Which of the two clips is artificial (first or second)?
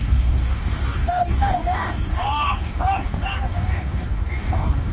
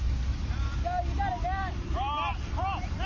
first